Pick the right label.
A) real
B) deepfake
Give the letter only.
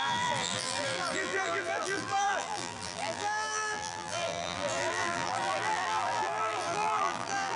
B